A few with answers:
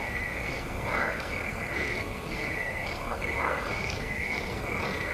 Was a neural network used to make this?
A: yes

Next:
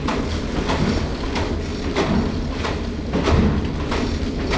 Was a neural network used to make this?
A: no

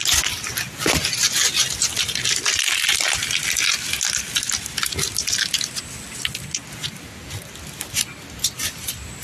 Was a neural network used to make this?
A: no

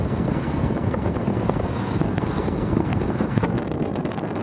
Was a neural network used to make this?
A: yes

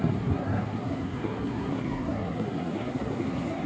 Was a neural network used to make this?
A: yes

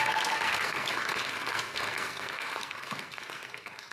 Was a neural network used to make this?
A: yes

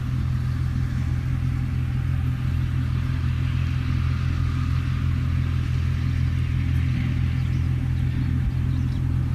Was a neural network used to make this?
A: no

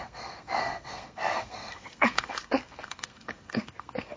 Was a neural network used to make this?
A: yes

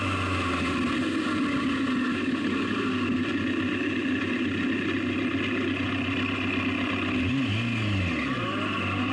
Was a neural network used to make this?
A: no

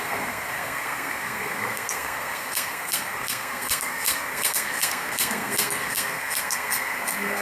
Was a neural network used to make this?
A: yes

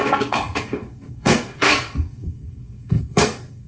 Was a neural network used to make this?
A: yes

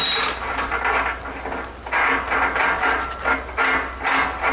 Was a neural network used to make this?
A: no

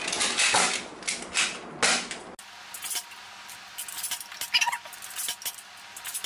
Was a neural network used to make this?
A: no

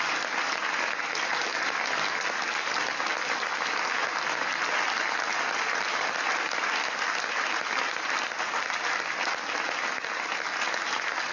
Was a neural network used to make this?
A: no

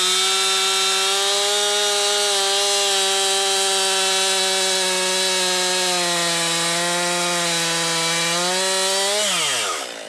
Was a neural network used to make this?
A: no